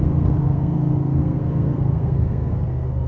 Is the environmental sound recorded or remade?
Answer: remade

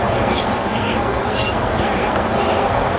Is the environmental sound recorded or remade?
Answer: remade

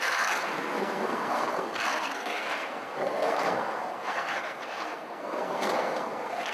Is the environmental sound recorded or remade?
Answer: remade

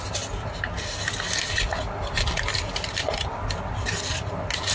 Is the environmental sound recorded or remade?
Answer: recorded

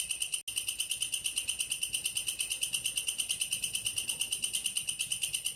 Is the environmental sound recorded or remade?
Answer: recorded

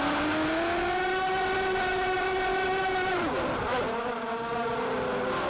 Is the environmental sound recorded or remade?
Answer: recorded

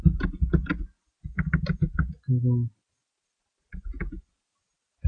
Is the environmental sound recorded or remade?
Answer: recorded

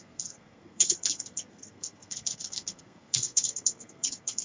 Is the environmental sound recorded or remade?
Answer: remade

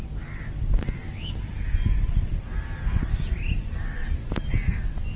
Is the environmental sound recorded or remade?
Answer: recorded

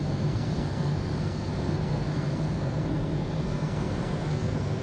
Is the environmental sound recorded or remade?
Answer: remade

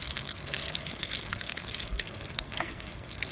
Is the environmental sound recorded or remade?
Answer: remade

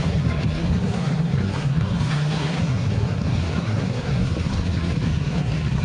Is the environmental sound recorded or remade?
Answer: remade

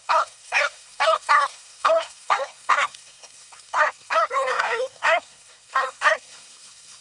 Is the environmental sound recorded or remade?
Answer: remade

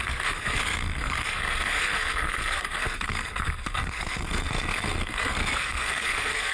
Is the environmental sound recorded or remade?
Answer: remade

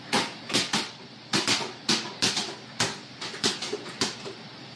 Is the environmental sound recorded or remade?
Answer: recorded